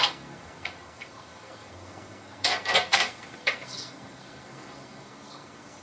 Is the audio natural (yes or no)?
no